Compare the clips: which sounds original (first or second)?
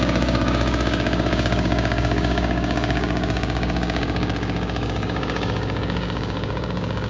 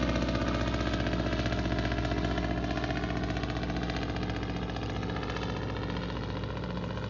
second